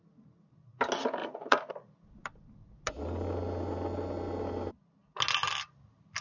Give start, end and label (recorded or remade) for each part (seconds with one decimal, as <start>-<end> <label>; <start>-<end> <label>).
0.0-1.2 recorded; 1.2-1.7 remade; 1.7-6.2 recorded